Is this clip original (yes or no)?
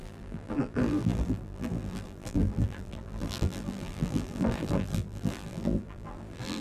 no